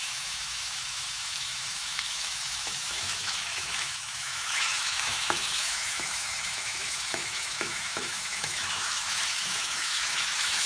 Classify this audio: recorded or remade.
remade